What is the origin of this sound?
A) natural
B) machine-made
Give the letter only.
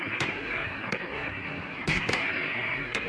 B